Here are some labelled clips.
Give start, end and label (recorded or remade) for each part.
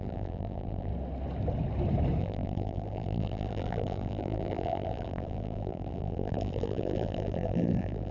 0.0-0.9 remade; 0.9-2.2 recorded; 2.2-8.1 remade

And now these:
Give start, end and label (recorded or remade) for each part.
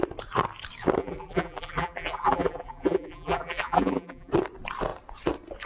0.0-1.0 recorded; 1.0-4.3 remade; 4.3-5.7 recorded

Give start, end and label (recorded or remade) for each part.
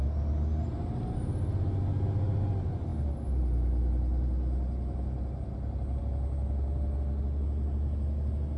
0.0-8.6 recorded